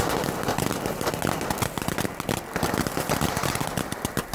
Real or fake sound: real